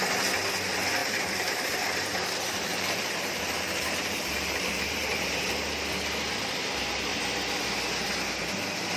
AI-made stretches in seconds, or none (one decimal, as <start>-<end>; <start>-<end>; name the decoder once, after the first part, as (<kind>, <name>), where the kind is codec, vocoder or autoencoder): 1.0-5.5 (vocoder, BigVGAN v2)